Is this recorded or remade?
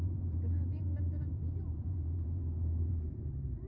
remade